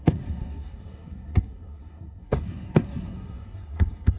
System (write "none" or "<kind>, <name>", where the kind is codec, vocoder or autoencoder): codec, SNAC